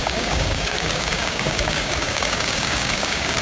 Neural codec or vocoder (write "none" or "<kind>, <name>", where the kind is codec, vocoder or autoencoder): codec, DAC